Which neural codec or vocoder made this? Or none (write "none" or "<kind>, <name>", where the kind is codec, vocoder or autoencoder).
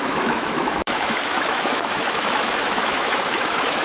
autoencoder, DAC-VAE